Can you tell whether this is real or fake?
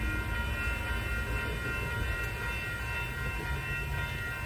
real